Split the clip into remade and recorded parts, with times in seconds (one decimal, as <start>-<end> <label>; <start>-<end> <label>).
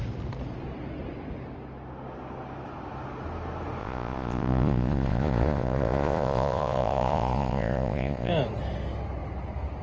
0.0-3.8 recorded; 3.8-8.3 remade; 8.3-9.8 recorded